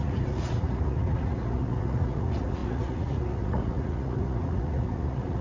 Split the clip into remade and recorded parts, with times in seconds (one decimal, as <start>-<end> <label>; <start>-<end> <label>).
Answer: 0.0-5.4 remade